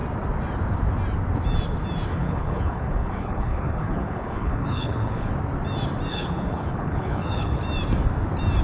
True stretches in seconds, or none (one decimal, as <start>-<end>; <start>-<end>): 0.0-2.1; 5.3-6.1; 7.6-8.6